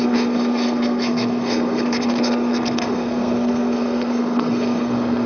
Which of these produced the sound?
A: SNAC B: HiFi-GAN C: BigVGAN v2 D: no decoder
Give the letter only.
A